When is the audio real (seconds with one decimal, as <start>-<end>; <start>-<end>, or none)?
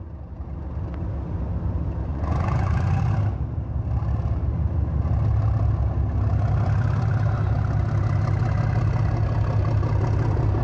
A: 0.0-2.1; 3.0-10.6